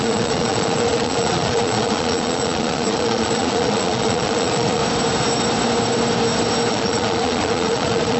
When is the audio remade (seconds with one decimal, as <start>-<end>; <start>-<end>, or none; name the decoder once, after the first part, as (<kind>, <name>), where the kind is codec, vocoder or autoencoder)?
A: 0.0-4.8 (vocoder, Vocos); 6.7-8.2